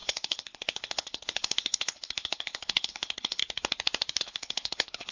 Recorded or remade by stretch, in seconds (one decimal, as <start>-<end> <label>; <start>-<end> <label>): 0.0-3.4 remade; 3.4-4.2 recorded; 4.2-5.1 remade